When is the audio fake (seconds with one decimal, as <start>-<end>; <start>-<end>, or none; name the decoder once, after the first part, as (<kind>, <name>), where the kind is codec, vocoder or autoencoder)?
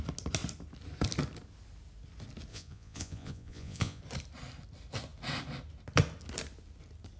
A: 2.5-4.0 (vocoder, Vocos)